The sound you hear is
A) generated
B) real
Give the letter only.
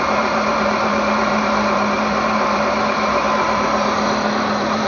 A